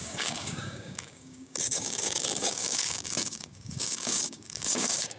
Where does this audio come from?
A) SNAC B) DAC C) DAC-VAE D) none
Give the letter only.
B